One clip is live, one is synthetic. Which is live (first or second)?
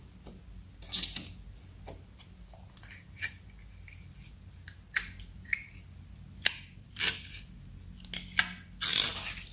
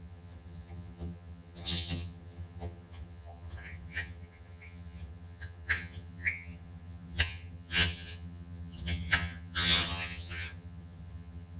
first